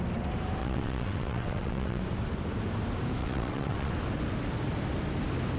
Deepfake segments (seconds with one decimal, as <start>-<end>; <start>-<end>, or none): 0.6-2.0; 3.2-3.9